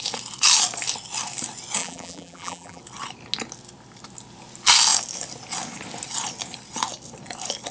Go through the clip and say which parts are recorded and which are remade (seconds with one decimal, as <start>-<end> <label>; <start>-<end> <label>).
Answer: 0.0-1.8 recorded; 1.8-2.8 remade; 2.8-7.7 recorded